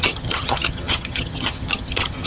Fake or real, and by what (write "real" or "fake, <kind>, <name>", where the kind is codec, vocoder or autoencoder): fake, vocoder, HiFi-GAN